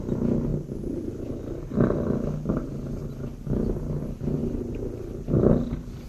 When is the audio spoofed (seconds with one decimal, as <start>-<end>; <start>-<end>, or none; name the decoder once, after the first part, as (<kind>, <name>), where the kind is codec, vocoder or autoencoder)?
0.5-1.1 (vocoder, BigVGAN v2); 4.4-6.1